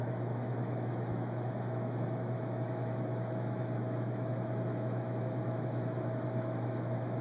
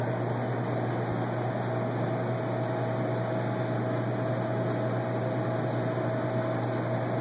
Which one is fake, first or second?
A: first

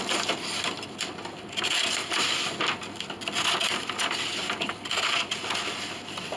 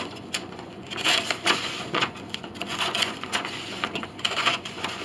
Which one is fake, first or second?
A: second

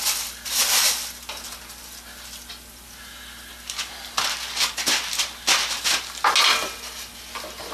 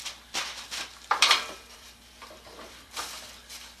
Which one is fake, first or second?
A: second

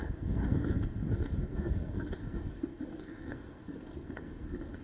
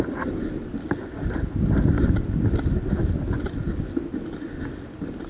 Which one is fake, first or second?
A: first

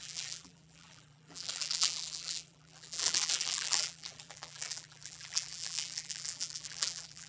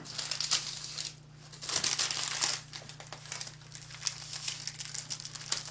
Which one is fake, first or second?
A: first